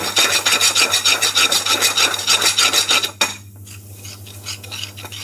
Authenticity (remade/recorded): recorded